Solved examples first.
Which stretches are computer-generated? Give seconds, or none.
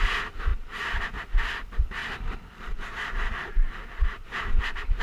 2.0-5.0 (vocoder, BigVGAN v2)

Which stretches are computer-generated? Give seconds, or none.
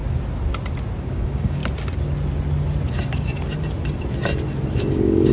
1.0-1.6 (codec, DAC); 4.8-5.3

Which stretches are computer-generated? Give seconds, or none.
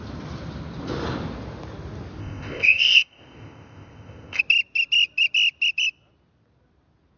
2.2-4.4 (codec, ZipCodec)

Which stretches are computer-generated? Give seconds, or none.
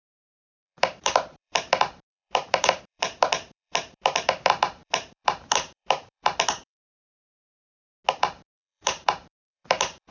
0.0-7.4 (vocoder, BigVGAN v2); 8.1-10.1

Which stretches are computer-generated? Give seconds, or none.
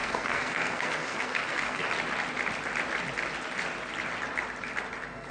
0.0-1.8 (codec, SNAC)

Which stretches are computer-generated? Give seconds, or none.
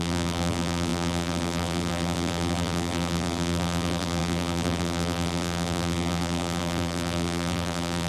0.0-8.1 (vocoder, BigVGAN v2)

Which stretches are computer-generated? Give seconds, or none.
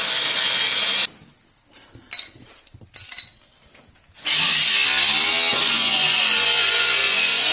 5.5-7.5 (vocoder, Vocos)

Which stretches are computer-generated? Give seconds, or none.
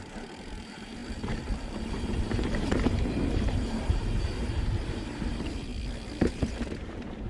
0.0-5.7 (vocoder, BigVGAN v2); 6.2-7.3